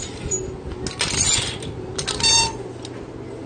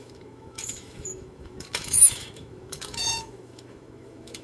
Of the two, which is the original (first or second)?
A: first